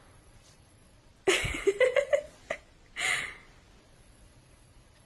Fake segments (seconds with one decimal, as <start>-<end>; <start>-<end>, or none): 0.0-1.1; 1.9-2.4; 3.8-5.1